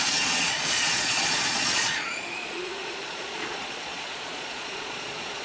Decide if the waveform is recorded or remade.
remade